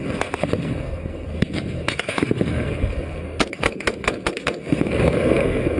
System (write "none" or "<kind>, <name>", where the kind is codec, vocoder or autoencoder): codec, SNAC